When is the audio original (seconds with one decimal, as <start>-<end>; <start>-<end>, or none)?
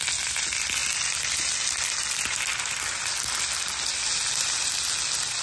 0.0-5.4